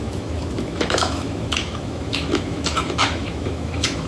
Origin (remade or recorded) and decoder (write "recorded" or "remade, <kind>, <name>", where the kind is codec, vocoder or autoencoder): remade, autoencoder, DAC-VAE